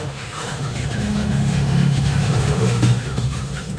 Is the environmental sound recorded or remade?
remade